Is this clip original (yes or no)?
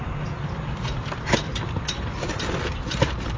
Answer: no